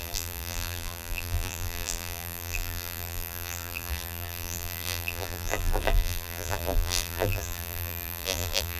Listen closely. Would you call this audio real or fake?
fake